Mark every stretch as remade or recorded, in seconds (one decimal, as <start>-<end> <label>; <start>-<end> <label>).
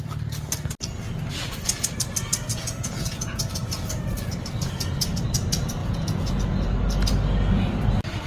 0.0-2.5 recorded; 2.5-3.6 remade; 3.6-5.8 recorded; 5.8-6.3 remade; 6.3-8.3 recorded